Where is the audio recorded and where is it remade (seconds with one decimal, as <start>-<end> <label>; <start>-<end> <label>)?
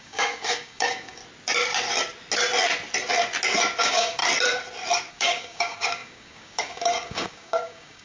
0.0-1.2 remade; 1.2-3.8 recorded; 3.8-4.2 remade; 4.2-5.1 recorded; 5.1-8.0 remade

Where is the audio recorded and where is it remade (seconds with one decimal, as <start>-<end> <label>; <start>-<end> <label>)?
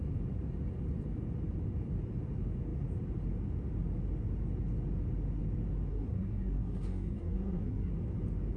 0.0-5.9 recorded; 5.9-7.9 remade; 7.9-8.6 recorded